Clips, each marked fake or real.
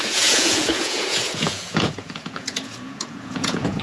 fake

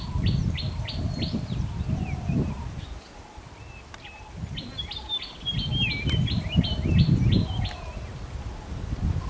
real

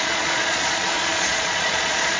fake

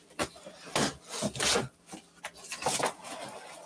real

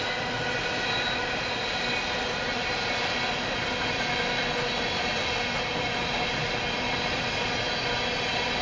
real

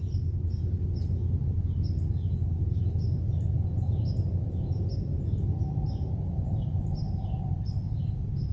real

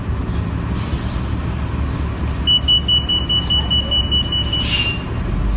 real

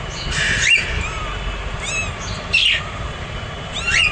real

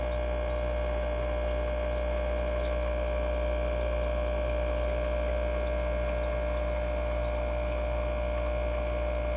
real